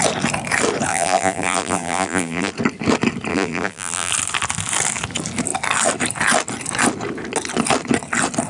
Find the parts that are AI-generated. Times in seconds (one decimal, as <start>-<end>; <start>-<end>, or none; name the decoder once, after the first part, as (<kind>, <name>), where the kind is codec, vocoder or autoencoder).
0.9-2.5 (vocoder, BigVGAN v2); 3.3-4.1